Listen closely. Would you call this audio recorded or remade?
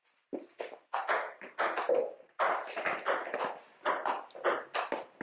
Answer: recorded